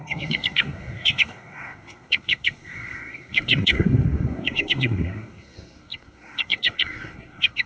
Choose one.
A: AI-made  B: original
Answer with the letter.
A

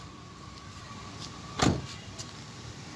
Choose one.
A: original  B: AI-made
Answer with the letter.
B